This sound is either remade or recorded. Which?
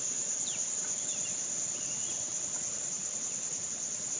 recorded